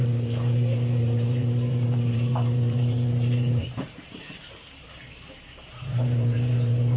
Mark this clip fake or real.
fake